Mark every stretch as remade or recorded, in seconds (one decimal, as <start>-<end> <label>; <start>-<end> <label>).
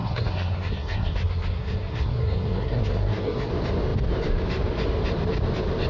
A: 0.0-3.5 remade; 3.5-5.9 recorded